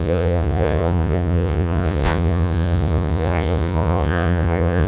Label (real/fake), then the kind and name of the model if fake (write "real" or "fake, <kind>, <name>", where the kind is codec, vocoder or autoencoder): fake, vocoder, Vocos